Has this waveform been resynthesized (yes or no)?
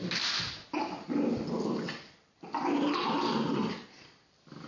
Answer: no